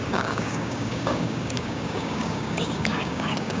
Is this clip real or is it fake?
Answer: fake